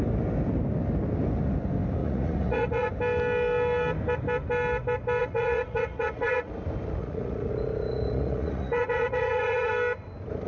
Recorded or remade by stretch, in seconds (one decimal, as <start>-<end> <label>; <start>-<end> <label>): 0.0-2.0 recorded; 2.0-2.9 remade; 2.9-5.2 recorded; 5.2-6.5 remade; 6.5-7.0 recorded; 7.0-7.5 remade; 7.5-7.9 recorded; 7.9-9.7 remade; 9.7-10.5 recorded